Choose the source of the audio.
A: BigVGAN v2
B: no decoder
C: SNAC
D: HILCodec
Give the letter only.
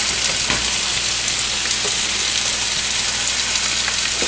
B